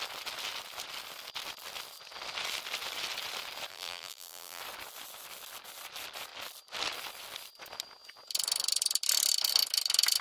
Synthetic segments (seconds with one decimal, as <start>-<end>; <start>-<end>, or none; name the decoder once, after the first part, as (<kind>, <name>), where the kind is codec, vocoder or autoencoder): 3.7-4.6 (vocoder, BigVGAN v2)